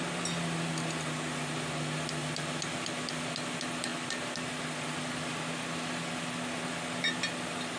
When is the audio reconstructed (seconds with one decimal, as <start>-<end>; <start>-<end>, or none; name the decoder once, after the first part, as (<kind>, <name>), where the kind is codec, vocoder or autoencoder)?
none